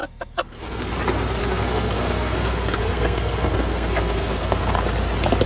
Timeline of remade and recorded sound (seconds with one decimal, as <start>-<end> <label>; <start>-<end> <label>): 0.0-0.9 remade; 0.9-1.4 recorded; 1.4-4.7 remade; 4.7-5.5 recorded